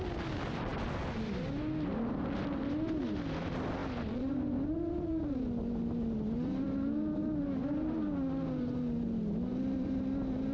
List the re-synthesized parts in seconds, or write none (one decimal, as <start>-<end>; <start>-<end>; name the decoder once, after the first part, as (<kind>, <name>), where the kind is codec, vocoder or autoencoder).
none